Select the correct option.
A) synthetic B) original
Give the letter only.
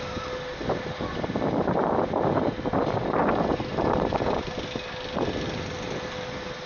B